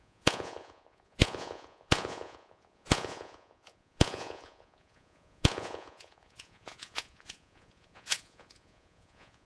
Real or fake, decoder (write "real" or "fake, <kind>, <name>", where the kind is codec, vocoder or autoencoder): fake, vocoder, Vocos